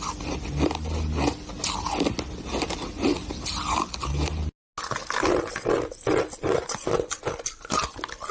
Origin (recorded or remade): recorded